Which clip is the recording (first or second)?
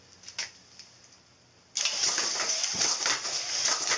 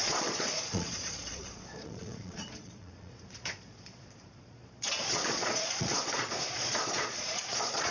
first